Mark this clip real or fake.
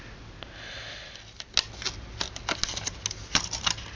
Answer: real